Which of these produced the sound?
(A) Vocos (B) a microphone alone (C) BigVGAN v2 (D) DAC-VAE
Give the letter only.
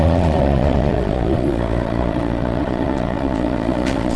A